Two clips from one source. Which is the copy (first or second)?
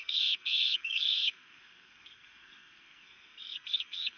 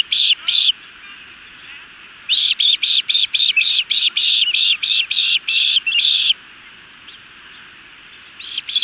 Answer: first